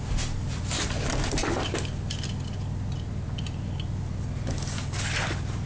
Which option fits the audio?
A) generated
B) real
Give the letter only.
B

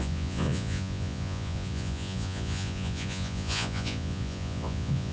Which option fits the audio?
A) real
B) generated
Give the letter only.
B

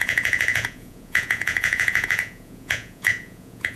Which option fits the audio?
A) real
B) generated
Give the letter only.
B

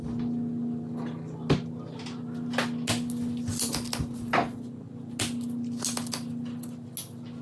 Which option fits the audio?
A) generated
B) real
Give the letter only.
B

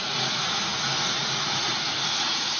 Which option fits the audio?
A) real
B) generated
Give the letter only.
B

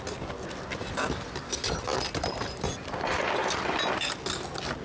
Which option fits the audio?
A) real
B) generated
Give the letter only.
A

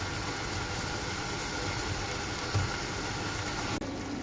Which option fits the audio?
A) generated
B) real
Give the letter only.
B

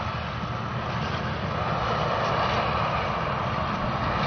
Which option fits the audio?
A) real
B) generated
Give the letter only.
A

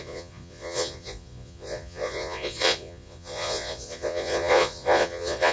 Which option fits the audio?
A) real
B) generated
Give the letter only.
B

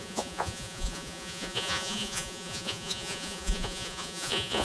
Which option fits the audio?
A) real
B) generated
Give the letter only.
B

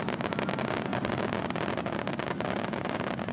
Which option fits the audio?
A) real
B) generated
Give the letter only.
A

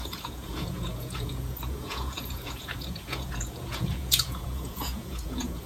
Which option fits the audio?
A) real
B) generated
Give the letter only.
B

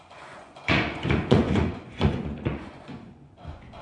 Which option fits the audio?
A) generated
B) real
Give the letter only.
A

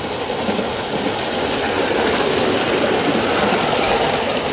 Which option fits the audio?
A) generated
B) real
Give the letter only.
B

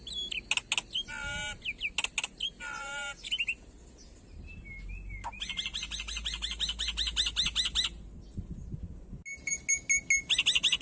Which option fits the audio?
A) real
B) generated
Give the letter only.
A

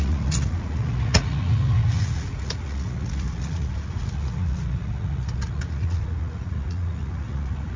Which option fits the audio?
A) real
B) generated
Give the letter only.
B